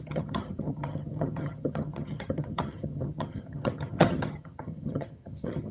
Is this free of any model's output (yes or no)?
no